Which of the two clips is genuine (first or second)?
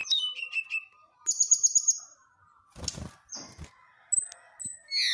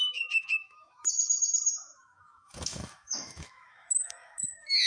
first